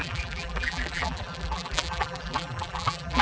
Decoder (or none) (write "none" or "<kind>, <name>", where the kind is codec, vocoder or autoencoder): vocoder, BigVGAN v2